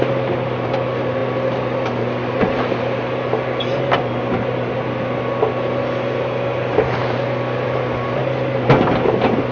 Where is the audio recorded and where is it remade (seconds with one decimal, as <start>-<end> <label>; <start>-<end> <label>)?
0.0-9.5 recorded